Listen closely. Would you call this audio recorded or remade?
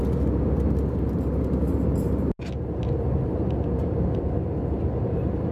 recorded